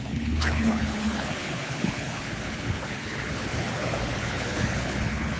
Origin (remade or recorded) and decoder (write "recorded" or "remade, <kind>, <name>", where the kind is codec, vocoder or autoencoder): remade, codec, HILCodec